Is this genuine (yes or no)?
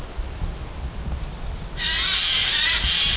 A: yes